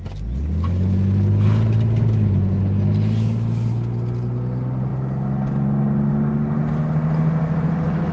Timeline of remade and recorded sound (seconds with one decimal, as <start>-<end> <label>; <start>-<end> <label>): 0.0-8.1 recorded